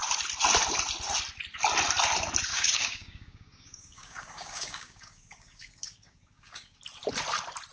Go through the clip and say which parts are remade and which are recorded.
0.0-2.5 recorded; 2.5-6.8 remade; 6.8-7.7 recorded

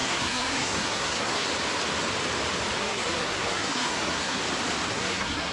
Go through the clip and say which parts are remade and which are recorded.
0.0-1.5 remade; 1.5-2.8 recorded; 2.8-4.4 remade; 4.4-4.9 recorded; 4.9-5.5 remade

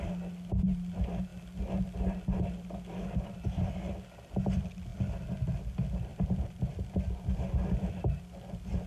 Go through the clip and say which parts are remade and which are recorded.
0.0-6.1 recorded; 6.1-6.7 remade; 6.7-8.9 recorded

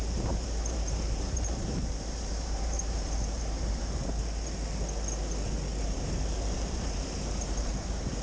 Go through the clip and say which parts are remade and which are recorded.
0.0-3.8 remade; 3.8-5.8 recorded; 5.8-8.2 remade

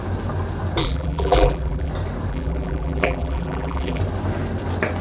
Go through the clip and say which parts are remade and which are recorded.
0.0-0.8 recorded; 0.8-1.9 remade; 1.9-2.3 recorded; 2.3-4.0 remade; 4.0-5.0 recorded

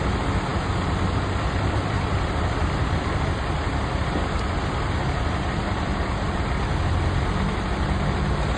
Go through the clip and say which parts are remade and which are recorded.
0.0-8.6 remade

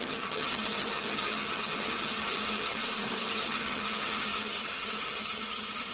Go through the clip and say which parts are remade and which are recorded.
0.0-2.8 remade; 2.8-3.3 recorded; 3.3-5.9 remade

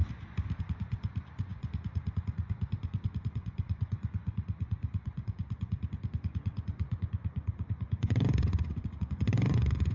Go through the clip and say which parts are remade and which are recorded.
0.0-0.6 recorded; 0.6-9.9 remade